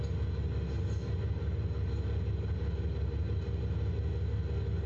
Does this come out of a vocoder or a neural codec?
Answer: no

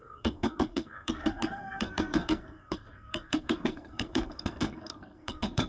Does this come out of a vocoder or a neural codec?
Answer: yes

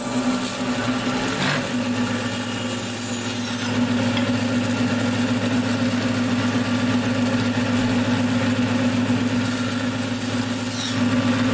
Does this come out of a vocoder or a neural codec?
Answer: no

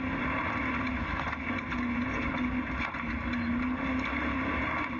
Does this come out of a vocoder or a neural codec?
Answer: no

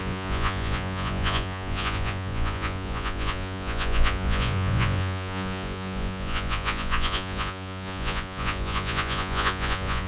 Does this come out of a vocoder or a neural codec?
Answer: yes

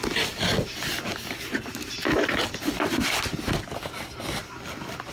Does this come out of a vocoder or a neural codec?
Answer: no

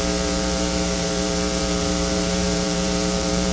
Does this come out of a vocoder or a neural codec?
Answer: yes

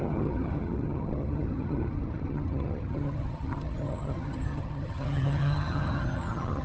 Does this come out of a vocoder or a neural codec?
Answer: yes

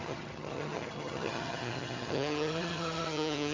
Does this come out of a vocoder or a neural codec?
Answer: yes